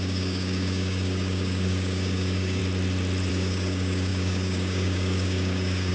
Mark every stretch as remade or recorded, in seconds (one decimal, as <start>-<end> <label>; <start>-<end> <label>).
0.0-2.6 remade; 2.6-3.3 recorded; 3.3-5.9 remade